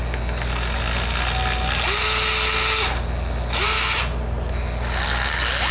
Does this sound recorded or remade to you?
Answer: recorded